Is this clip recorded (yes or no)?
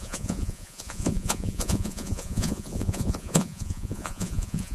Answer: no